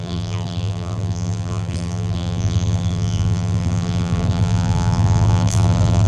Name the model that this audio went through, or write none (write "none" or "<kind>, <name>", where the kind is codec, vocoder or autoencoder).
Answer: vocoder, BigVGAN v2